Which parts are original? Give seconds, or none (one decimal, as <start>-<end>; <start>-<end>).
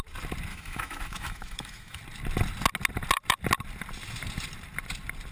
0.0-0.5; 2.0-5.3